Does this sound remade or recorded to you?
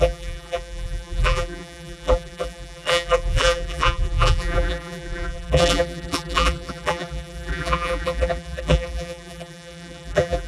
remade